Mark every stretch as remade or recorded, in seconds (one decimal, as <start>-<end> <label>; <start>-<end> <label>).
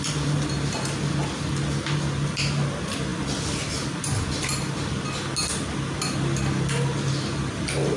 0.0-8.0 recorded